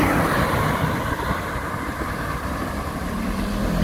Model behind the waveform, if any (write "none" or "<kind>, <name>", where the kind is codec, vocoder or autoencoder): none